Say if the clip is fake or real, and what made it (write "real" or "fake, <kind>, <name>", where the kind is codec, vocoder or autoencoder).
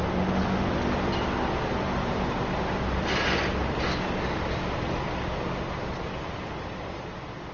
real